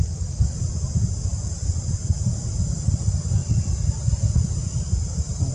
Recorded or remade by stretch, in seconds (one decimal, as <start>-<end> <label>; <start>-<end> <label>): 0.0-5.5 recorded